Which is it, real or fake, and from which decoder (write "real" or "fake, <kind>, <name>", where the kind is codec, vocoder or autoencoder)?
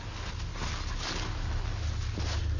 real